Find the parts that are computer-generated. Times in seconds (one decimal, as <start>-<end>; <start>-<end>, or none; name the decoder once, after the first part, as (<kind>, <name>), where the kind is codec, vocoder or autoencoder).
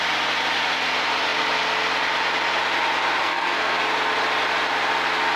3.2-3.8 (codec, SNAC)